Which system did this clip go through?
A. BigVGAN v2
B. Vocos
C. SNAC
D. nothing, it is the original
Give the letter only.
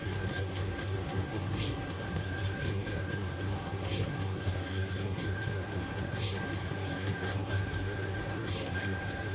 C